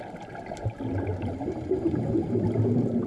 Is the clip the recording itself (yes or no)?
yes